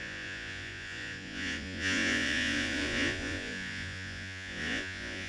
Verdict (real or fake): fake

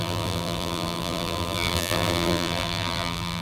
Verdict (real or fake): fake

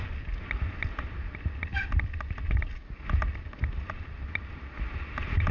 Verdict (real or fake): real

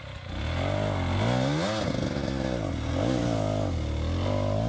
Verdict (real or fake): real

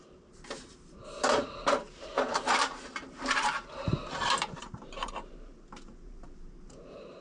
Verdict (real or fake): fake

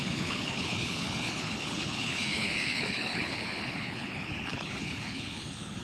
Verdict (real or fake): fake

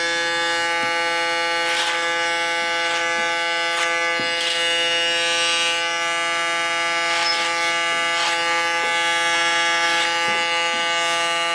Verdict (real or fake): real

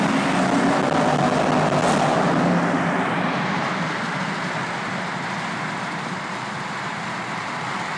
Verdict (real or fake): real